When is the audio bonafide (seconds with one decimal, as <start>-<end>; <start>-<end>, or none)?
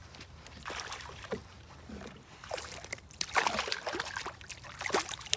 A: none